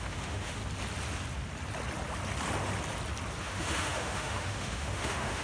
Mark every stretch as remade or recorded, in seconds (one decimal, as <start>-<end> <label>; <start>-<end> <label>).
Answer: 0.0-0.6 remade; 0.6-3.4 recorded; 3.4-5.4 remade